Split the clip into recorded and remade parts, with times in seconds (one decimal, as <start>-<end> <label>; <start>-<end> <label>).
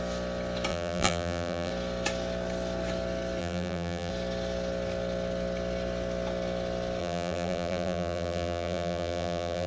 0.0-0.7 recorded; 0.7-1.7 remade; 1.7-3.4 recorded; 3.4-4.1 remade; 4.1-7.0 recorded; 7.0-9.7 remade